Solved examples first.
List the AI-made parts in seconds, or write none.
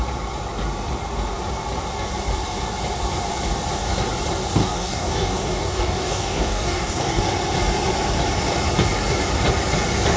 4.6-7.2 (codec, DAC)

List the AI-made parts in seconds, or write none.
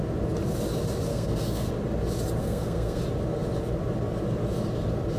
1.1-1.7 (codec, SNAC); 2.4-3.0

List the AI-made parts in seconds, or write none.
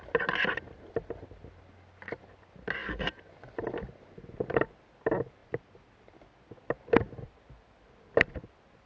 5.4-7.5 (vocoder, BigVGAN v2)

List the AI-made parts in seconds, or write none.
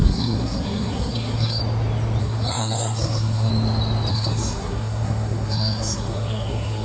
0.0-1.6 (codec, SNAC); 2.2-3.5; 4.1-6.8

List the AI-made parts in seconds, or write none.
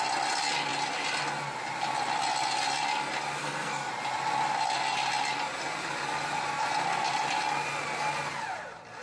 3.4-3.9 (codec, SNAC)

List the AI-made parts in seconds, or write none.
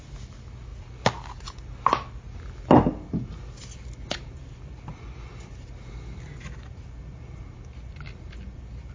none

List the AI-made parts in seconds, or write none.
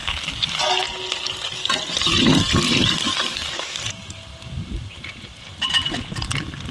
0.0-0.6 (codec, DAC); 3.1-3.8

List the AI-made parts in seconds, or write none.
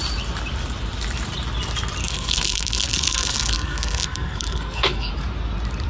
2.0-5.1 (codec, SNAC)